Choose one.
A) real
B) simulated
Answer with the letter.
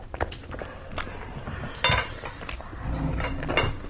A